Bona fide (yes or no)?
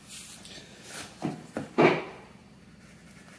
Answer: yes